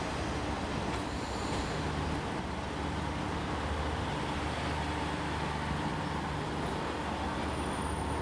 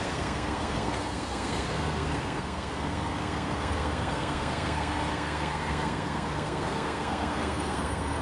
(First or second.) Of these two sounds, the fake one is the second